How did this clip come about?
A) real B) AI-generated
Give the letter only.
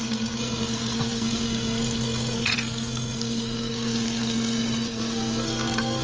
B